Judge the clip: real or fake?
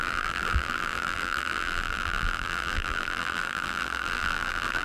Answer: fake